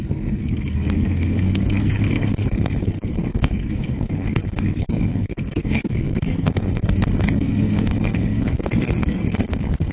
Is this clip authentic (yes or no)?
no